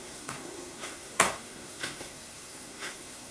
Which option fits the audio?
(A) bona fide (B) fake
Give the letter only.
B